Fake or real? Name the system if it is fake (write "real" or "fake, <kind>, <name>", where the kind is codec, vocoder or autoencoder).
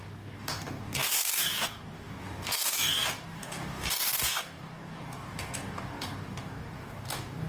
fake, codec, DAC